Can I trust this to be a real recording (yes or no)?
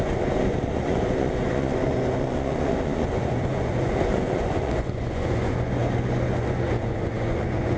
no